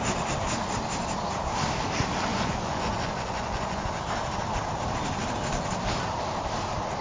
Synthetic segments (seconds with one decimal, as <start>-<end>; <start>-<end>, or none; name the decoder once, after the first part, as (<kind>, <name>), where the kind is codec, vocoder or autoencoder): 2.3-4.0 (vocoder, Vocos)